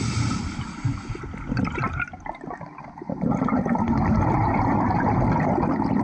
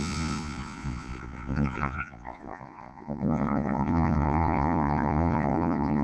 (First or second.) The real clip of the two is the first